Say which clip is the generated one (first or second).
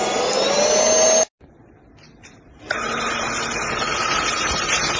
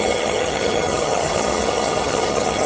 second